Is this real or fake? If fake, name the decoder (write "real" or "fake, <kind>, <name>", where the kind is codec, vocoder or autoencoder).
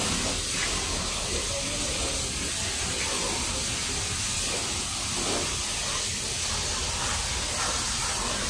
real